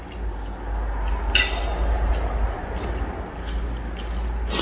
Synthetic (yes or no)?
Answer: no